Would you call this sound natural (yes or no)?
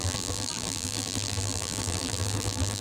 no